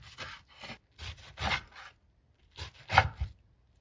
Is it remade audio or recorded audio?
recorded